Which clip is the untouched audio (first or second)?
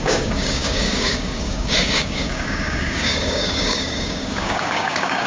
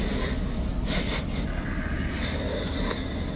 second